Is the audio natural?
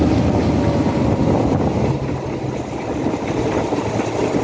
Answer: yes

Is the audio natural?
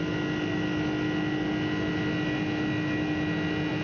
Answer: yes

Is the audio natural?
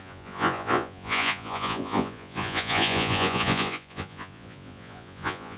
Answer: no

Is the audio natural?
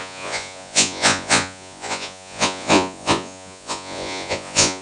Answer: no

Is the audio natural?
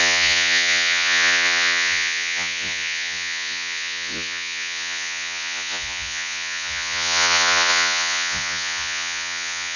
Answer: no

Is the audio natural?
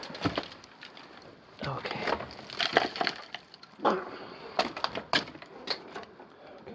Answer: yes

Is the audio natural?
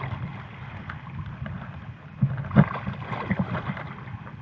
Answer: yes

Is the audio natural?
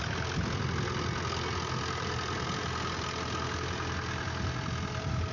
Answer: yes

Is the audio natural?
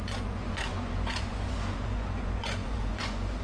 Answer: no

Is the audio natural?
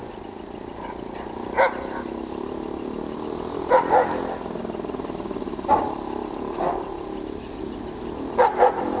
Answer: yes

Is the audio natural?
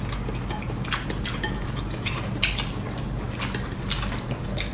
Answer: yes